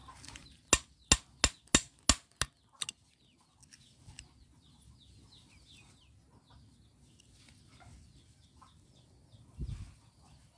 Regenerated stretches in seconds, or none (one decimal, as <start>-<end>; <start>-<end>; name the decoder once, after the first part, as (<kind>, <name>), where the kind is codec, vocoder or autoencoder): 0.0-0.7 (vocoder, BigVGAN v2)

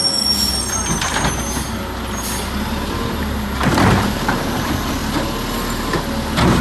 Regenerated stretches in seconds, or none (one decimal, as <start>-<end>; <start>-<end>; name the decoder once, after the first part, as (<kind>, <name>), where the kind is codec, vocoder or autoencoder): 2.9-5.0 (vocoder, BigVGAN v2)

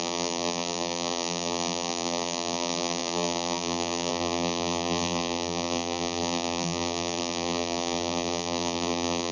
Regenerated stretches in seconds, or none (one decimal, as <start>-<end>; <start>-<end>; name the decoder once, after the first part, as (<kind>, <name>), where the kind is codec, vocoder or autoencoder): 0.0-9.3 (vocoder, BigVGAN v2)

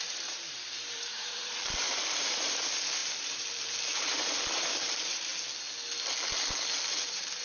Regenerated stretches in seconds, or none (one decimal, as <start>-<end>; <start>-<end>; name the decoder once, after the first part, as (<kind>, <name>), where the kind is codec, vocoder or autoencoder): 0.0-5.3 (vocoder, BigVGAN v2); 6.9-7.4

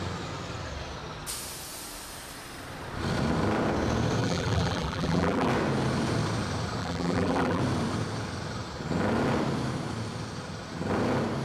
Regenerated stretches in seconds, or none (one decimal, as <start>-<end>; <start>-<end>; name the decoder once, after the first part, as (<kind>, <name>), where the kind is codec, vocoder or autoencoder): 4.2-5.5 (vocoder, BigVGAN v2); 6.8-7.6